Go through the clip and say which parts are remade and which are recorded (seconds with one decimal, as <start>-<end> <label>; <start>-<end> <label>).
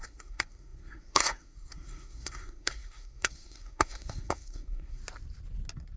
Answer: 0.0-5.0 remade; 5.0-6.0 recorded